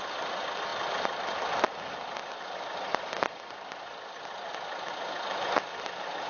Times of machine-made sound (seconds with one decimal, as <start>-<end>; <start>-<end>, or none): none

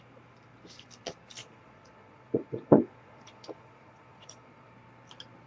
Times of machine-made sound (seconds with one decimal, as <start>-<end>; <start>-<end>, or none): 1.4-4.7

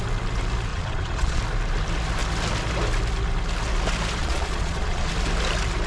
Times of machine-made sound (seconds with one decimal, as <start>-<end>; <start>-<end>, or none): 0.7-1.4; 4.2-5.1

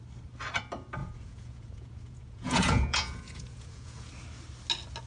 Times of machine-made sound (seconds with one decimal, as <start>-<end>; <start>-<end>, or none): 1.0-4.1

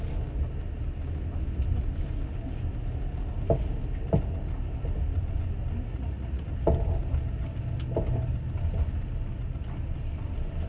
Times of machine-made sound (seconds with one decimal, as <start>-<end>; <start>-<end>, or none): 5.9-6.4